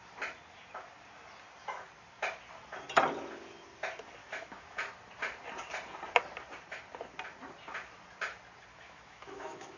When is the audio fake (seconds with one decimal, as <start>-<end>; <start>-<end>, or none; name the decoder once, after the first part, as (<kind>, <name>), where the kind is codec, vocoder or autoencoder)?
4.2-4.9 (autoencoder, DAC-VAE); 8.7-9.8